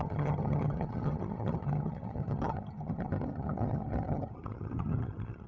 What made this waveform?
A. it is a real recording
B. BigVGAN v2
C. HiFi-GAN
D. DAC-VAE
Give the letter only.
C